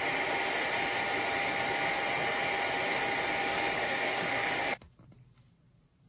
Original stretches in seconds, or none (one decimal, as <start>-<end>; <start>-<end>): 0.0-3.4; 4.6-6.1